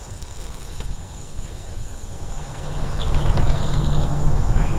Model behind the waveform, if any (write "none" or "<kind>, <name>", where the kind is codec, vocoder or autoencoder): codec, SNAC